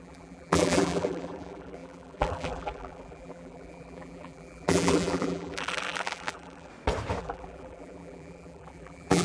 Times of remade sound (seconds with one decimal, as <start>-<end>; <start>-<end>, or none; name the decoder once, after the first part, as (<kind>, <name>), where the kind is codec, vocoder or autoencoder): 0.0-6.7 (vocoder, BigVGAN v2); 7.2-9.2